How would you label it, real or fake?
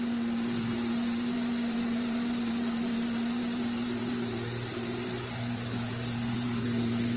fake